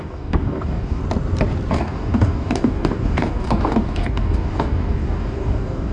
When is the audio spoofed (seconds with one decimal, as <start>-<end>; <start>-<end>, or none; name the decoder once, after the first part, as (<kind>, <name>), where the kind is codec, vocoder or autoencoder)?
0.0-1.0 (codec, DAC); 1.7-5.9